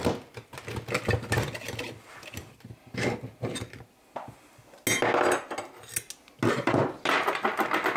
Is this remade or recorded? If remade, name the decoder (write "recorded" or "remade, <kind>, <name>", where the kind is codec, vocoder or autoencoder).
recorded